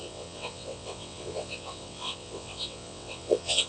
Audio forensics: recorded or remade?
remade